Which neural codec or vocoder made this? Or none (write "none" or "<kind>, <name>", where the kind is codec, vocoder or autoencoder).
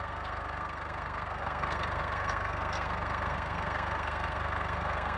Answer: codec, SNAC